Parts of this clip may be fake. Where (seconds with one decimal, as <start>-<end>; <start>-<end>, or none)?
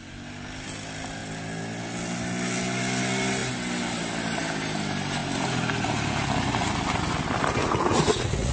7.6-8.5